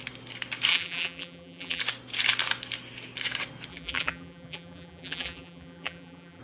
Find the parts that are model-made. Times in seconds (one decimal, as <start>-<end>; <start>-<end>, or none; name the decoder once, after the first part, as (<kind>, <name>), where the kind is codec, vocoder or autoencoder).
0.7-1.8 (vocoder, BigVGAN v2); 3.7-6.4